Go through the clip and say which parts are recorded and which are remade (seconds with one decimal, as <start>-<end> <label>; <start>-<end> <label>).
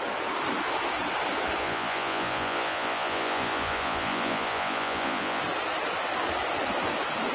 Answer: 0.0-1.6 recorded; 1.6-5.4 remade; 5.4-7.3 recorded